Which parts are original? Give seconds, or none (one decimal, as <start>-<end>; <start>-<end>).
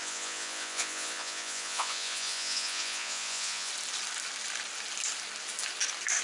3.7-6.2